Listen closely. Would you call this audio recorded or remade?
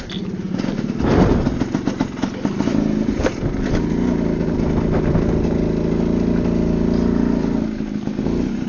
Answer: recorded